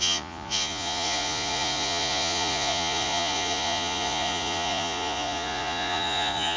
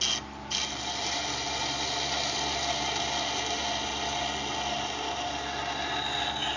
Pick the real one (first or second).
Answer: second